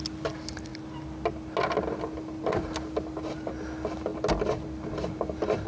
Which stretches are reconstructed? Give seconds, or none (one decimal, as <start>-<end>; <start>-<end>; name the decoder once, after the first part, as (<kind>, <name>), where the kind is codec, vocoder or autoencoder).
none